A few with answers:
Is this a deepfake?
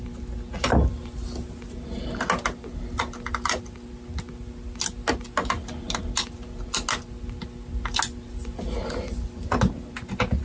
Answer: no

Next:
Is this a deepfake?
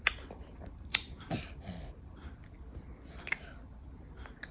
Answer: no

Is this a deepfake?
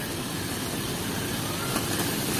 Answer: no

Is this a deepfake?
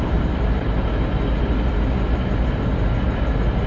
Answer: no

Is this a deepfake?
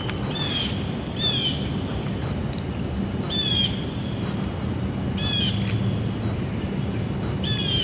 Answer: no